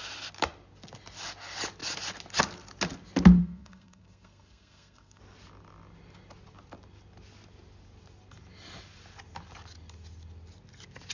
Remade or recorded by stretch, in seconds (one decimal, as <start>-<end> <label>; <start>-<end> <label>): 0.0-3.4 recorded; 3.4-5.2 remade; 5.2-11.1 recorded